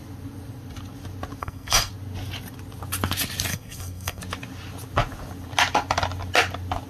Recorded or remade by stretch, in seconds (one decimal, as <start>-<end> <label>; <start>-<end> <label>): 0.0-1.4 recorded; 1.4-1.9 remade; 1.9-3.5 recorded; 3.5-4.2 remade; 4.2-6.9 recorded